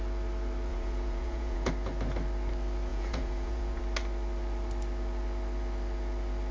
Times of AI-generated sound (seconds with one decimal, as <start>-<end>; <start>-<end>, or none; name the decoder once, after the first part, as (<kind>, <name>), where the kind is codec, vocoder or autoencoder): 0.7-1.7 (vocoder, Vocos); 2.9-3.8